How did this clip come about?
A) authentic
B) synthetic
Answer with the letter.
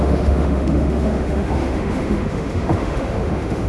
B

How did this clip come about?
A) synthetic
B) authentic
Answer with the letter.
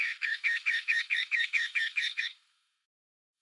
A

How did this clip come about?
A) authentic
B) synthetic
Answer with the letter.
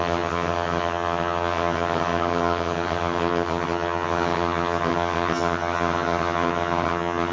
B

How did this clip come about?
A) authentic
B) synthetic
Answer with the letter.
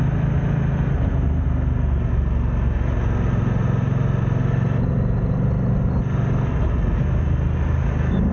A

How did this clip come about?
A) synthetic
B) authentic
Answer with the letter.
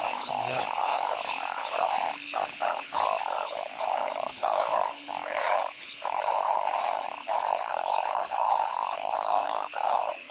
A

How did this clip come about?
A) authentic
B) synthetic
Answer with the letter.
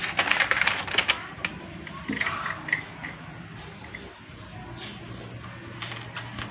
A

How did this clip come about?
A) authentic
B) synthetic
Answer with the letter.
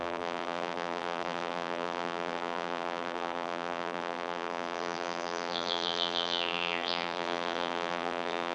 B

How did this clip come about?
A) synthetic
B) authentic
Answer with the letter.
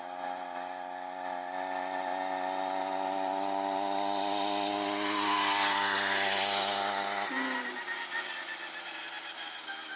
B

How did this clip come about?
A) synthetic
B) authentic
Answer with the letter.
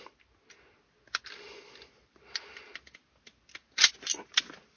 B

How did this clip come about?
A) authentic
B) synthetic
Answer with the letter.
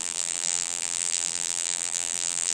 B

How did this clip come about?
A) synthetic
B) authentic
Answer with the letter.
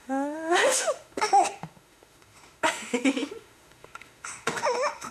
A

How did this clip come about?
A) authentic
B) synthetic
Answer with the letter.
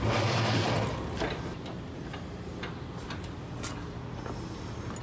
A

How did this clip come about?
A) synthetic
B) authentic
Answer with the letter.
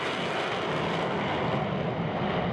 B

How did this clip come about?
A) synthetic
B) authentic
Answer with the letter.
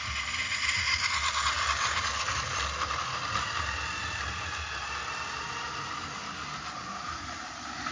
B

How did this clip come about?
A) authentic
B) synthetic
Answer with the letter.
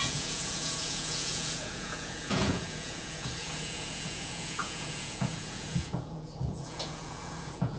B